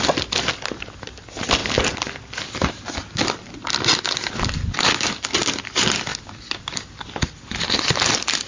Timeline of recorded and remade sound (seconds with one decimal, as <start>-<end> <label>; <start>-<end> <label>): 0.0-8.5 recorded